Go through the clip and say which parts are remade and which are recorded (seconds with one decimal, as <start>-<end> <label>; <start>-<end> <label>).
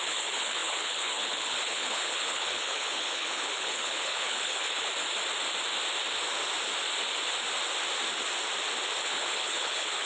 0.0-4.9 remade; 4.9-9.0 recorded; 9.0-10.1 remade